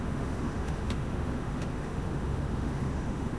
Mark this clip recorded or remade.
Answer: remade